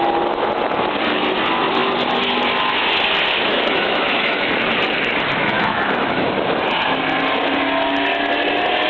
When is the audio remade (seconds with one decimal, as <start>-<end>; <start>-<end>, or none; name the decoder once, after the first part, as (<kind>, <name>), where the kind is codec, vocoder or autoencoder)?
3.5-4.4 (autoencoder, DAC-VAE); 5.4-6.3